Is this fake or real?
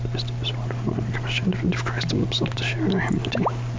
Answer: real